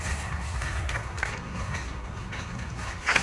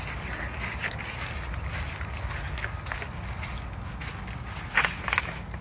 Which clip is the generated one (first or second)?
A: first